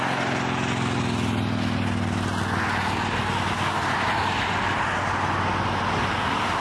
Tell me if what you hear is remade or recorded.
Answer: recorded